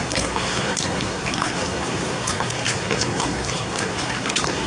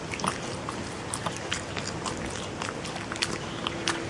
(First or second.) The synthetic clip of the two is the first